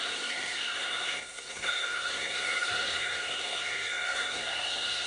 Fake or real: fake